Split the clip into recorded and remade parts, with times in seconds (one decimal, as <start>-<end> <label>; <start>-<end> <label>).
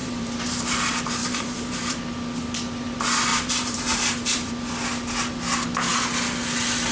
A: 0.0-0.7 remade; 0.7-1.2 recorded; 1.2-2.0 remade; 2.0-3.3 recorded; 3.3-4.5 remade; 4.5-6.9 recorded